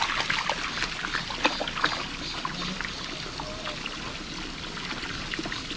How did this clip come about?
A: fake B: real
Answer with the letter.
B